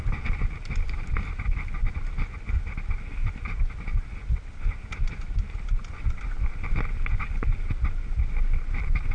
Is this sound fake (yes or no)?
no